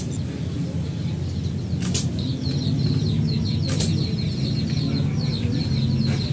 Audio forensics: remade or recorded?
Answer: recorded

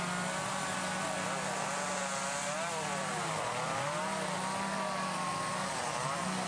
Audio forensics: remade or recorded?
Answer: recorded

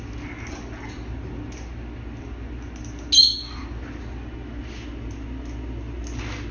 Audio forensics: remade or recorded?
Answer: recorded